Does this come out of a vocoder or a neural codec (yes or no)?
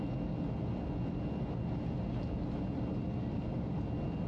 no